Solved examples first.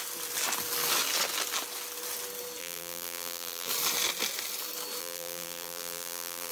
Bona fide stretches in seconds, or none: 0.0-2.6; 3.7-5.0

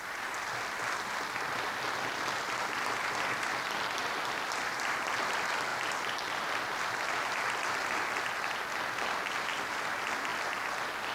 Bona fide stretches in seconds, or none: 0.0-11.1

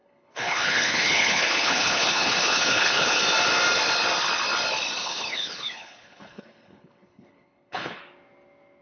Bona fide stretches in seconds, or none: 3.2-5.0; 8.0-8.8

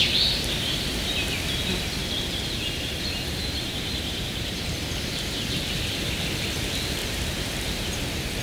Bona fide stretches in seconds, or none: 0.0-2.0; 6.0-7.0; 8.0-8.4

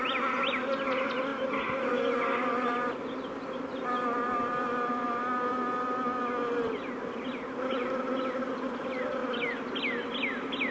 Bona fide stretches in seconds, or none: 0.0-10.7

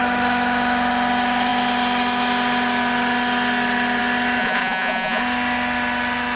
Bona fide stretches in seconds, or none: 0.0-4.4; 5.2-6.4